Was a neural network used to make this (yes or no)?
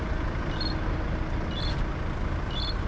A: no